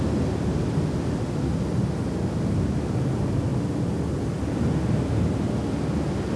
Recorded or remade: recorded